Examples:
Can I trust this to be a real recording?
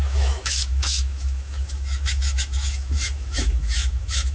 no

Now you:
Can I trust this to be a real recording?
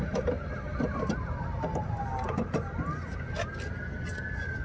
yes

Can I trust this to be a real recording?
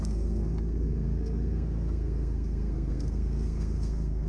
no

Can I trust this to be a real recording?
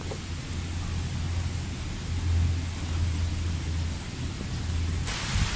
yes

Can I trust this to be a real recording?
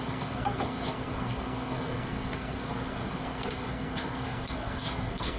no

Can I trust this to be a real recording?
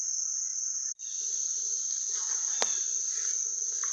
no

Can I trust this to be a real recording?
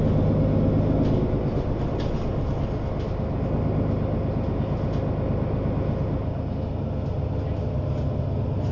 yes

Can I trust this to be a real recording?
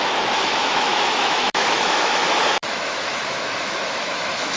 no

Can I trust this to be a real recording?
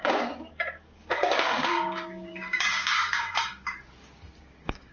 no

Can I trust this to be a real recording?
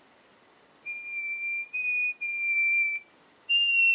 yes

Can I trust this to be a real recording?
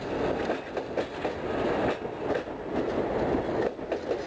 yes